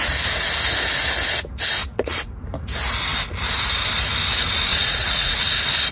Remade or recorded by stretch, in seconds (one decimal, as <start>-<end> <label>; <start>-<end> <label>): 0.0-1.8 recorded; 1.8-2.3 remade; 2.3-4.7 recorded; 4.7-5.4 remade; 5.4-5.9 recorded